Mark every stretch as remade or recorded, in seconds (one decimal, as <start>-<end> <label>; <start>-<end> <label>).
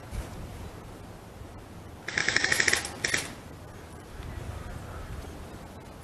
0.0-2.2 recorded; 2.2-2.7 remade; 2.7-6.0 recorded